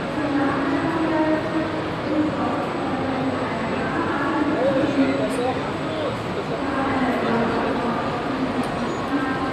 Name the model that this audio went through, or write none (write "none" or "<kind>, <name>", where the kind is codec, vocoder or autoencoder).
none